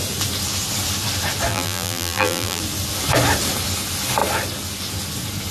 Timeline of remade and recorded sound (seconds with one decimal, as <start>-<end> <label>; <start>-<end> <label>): 0.0-1.5 recorded; 1.5-2.6 remade; 2.6-5.5 recorded

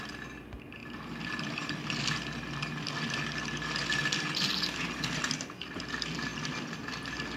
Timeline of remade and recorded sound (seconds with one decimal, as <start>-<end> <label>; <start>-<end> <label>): 0.0-7.4 recorded

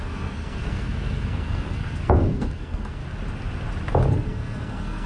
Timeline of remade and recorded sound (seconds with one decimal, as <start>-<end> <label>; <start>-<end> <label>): 0.0-3.0 remade; 3.0-4.1 recorded; 4.1-5.1 remade

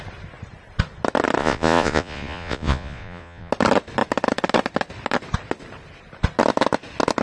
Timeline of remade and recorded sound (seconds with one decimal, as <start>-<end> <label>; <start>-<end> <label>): 0.0-1.4 recorded; 1.4-3.5 remade; 3.5-7.2 recorded

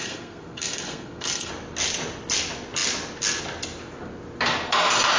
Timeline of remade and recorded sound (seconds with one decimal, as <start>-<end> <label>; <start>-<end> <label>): 0.0-1.5 remade; 1.5-5.2 recorded